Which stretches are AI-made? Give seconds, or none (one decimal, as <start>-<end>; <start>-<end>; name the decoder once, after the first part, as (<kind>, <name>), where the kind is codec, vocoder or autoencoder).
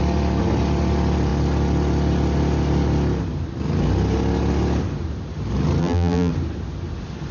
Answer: 5.8-6.3 (vocoder, BigVGAN v2)